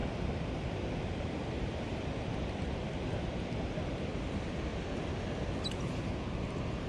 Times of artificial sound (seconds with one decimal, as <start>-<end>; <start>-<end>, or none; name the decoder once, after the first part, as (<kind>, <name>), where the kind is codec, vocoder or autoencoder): 0.0-4.1 (vocoder, BigVGAN v2)